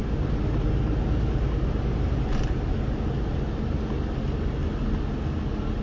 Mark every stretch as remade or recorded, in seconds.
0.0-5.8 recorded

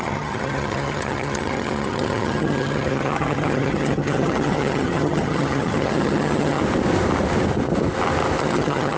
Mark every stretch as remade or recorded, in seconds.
0.0-6.6 remade; 6.6-8.4 recorded; 8.4-9.0 remade